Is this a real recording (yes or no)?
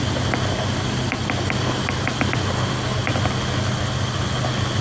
yes